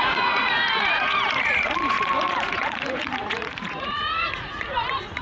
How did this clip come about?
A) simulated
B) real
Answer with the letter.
A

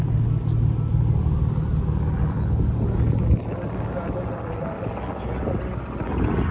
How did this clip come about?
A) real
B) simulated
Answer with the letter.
A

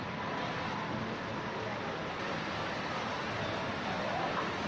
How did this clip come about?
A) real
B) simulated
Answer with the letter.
A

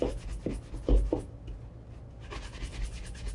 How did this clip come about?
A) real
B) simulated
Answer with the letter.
A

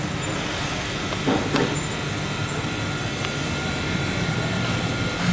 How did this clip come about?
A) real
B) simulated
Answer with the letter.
A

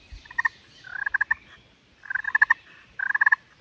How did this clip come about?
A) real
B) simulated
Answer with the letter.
A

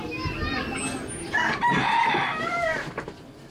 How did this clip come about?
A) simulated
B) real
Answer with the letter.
B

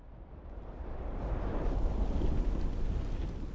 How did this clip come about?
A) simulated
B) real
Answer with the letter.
B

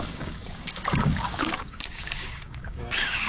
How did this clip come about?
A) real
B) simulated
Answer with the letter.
B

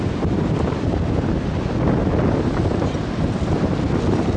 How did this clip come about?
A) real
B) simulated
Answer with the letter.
A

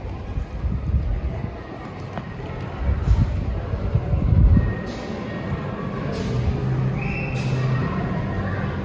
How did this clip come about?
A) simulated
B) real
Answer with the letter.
B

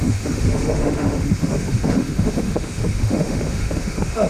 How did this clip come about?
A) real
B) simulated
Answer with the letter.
B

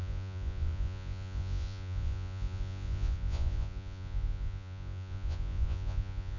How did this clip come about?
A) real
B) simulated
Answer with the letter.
B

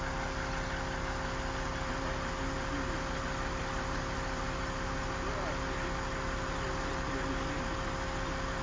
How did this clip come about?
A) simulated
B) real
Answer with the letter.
B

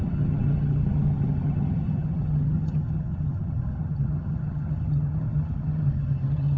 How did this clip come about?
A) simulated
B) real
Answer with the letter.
A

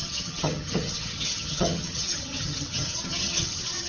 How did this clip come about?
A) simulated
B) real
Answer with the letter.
A